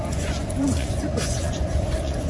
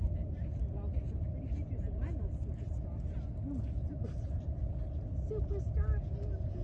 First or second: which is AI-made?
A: first